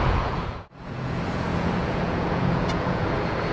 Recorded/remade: remade